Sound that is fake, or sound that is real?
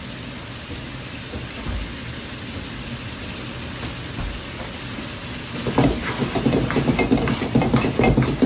real